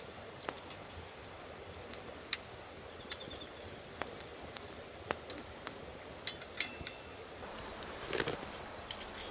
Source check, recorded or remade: recorded